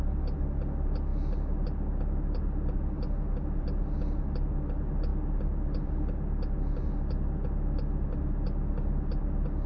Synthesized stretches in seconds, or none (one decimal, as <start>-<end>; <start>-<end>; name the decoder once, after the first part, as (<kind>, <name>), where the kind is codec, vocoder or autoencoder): none